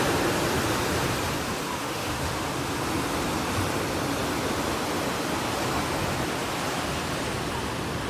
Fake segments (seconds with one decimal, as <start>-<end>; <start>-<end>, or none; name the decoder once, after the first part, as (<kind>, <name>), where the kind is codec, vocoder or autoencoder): 1.8-2.5 (autoencoder, DAC-VAE)